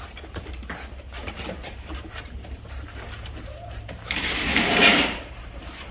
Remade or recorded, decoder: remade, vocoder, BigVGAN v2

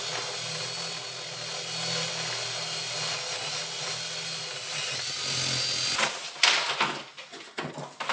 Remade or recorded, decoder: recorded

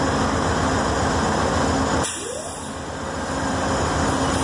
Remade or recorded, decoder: recorded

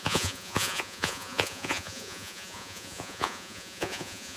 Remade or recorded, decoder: remade, vocoder, Vocos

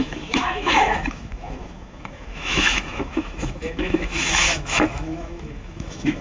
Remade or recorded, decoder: remade, autoencoder, DAC-VAE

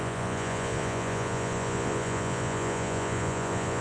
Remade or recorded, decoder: remade, vocoder, Vocos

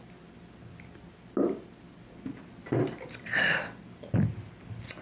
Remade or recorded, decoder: recorded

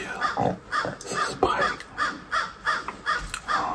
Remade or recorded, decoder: recorded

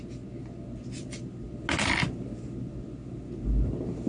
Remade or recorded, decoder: recorded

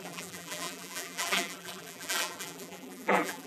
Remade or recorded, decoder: remade, vocoder, BigVGAN v2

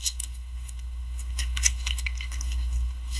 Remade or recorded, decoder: remade, codec, SNAC